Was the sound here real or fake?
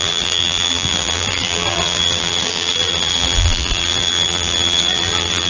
fake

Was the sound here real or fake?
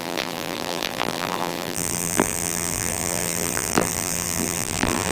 fake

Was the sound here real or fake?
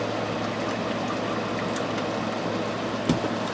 real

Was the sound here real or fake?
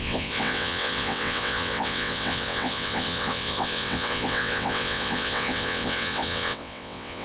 fake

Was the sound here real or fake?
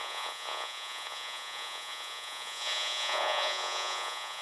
fake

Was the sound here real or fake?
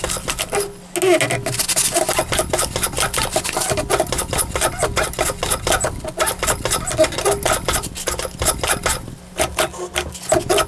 real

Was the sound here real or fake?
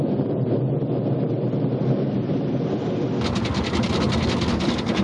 real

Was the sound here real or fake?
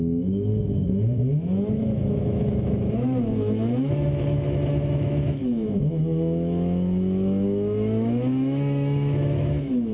fake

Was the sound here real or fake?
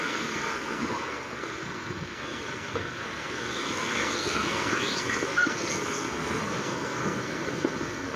fake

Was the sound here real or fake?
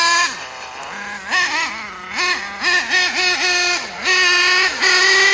real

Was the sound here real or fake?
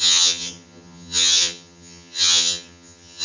fake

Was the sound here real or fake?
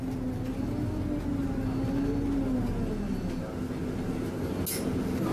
real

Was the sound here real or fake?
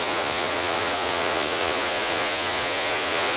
fake